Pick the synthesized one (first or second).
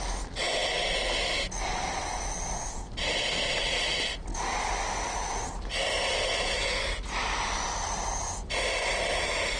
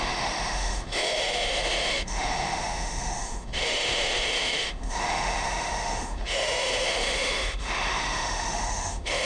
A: second